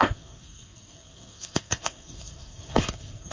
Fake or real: fake